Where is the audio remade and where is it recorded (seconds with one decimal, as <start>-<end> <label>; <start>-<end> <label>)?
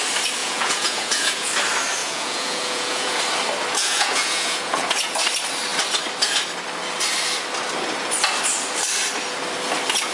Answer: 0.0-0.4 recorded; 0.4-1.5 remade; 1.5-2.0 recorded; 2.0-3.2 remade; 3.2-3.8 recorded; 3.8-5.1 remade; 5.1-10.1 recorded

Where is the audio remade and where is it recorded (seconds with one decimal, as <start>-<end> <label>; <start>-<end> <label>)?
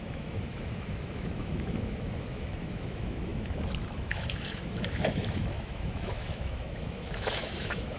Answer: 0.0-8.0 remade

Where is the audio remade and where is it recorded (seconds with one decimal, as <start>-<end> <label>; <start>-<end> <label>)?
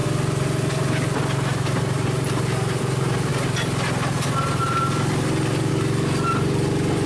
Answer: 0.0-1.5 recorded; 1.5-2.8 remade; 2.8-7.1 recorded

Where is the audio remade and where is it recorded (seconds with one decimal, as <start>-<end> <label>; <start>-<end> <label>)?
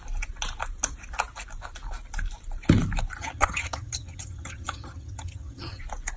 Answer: 0.0-3.2 recorded; 3.2-5.8 remade; 5.8-6.2 recorded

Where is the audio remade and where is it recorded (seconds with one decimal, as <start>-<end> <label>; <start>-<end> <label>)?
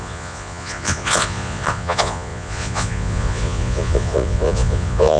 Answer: 0.0-5.2 remade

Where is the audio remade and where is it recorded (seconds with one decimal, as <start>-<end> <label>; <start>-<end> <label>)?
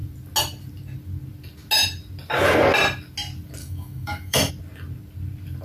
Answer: 0.0-3.6 recorded; 3.6-4.5 remade; 4.5-5.6 recorded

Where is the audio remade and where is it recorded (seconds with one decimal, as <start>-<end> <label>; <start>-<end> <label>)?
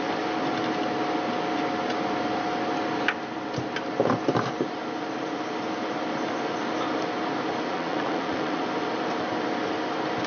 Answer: 0.0-7.7 recorded; 7.7-8.6 remade; 8.6-10.3 recorded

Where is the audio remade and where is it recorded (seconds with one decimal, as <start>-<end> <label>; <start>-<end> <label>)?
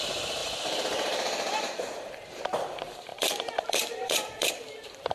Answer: 0.0-5.1 remade